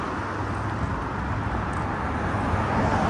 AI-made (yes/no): no